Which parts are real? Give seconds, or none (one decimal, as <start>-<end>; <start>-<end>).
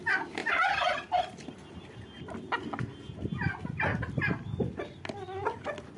0.0-6.0